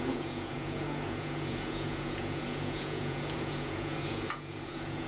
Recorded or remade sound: remade